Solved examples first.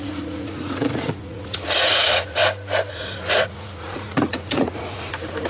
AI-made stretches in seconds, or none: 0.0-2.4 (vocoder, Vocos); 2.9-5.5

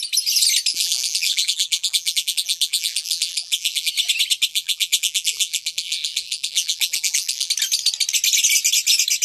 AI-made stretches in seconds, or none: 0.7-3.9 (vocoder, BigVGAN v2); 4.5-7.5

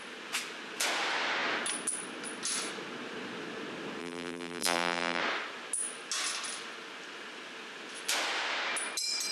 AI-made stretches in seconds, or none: 4.0-5.2 (vocoder, BigVGAN v2)